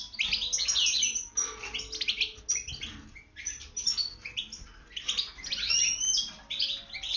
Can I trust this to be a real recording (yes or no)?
yes